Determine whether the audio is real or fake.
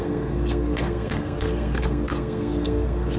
fake